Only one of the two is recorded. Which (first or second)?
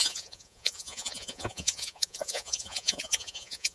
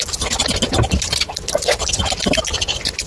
second